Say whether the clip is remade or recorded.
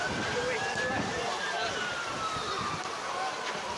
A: remade